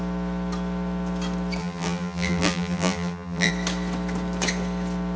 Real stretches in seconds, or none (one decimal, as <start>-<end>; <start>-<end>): 0.0-1.6; 3.5-5.2